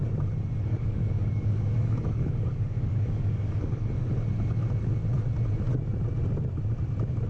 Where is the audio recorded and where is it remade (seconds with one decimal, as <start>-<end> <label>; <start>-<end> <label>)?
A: 0.0-0.7 recorded; 0.7-3.9 remade; 3.9-7.3 recorded